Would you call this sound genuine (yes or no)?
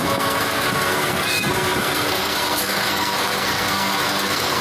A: no